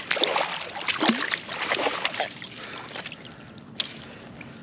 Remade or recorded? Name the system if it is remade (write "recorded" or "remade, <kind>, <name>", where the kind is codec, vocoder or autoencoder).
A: recorded